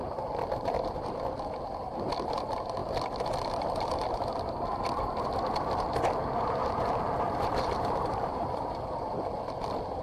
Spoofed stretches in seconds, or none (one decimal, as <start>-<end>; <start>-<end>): 0.0-1.1; 6.6-8.8